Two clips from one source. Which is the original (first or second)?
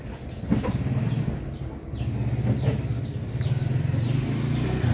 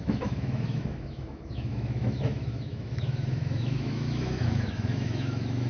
first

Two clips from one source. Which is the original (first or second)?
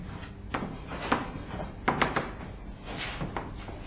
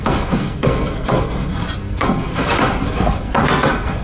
first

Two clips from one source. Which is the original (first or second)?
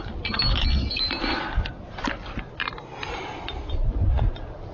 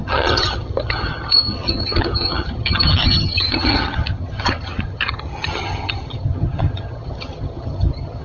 first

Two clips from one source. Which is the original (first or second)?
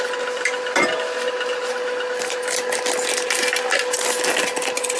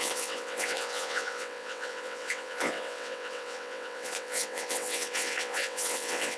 first